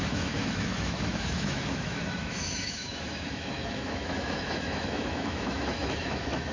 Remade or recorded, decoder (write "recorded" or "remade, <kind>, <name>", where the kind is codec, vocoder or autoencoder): remade, autoencoder, DAC-VAE